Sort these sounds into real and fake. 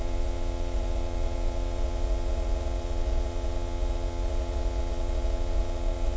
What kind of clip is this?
fake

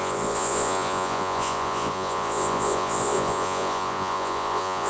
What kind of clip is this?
fake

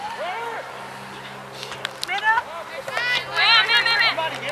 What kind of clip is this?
real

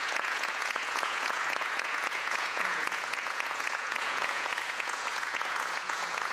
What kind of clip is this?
fake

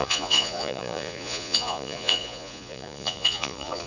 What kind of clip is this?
fake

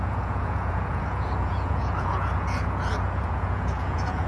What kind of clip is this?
fake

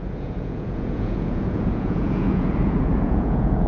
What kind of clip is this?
fake